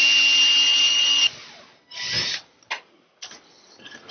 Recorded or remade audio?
recorded